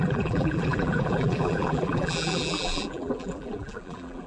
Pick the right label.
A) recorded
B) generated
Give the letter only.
B